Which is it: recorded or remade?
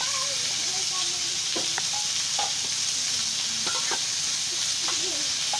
recorded